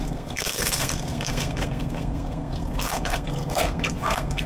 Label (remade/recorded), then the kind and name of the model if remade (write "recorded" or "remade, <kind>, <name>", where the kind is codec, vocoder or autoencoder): remade, codec, SNAC